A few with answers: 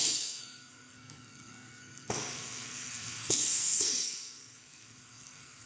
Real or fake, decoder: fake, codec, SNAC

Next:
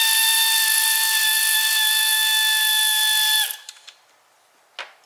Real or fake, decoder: real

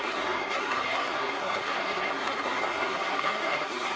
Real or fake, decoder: fake, codec, SNAC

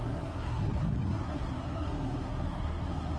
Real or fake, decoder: fake, codec, SNAC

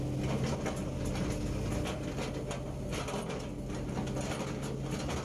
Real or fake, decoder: real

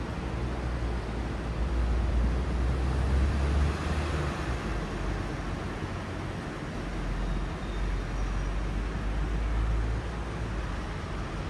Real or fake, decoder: real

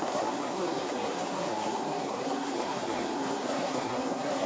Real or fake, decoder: fake, codec, SNAC